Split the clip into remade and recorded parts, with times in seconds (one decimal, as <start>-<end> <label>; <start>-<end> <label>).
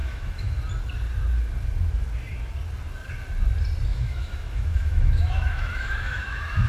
0.0-0.6 remade; 0.6-3.9 recorded; 3.9-6.7 remade